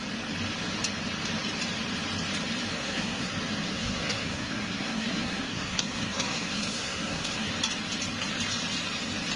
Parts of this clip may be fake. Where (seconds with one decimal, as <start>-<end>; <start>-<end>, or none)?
2.7-3.3; 3.7-7.5